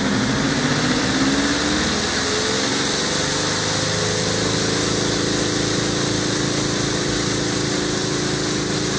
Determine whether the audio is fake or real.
real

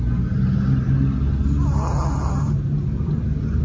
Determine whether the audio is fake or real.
real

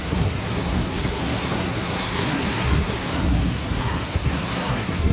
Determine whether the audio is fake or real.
fake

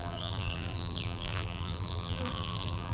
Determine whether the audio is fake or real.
fake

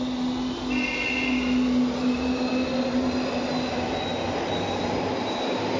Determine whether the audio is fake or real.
real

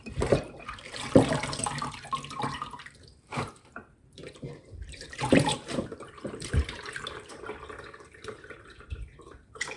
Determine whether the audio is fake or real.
fake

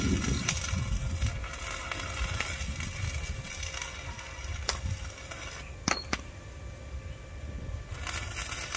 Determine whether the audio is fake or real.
real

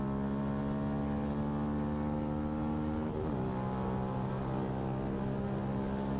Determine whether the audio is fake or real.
real